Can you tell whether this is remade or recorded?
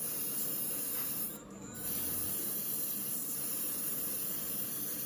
remade